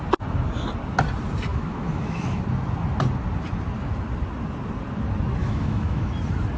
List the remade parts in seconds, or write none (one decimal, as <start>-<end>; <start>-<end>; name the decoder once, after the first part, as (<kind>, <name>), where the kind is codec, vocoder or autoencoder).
1.5-2.4 (autoencoder, DAC-VAE); 5.4-6.1

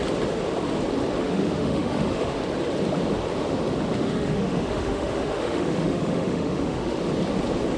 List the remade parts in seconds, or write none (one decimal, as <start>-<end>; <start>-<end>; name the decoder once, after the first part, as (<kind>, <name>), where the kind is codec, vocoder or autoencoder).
1.2-2.4 (autoencoder, DAC-VAE); 4.0-7.0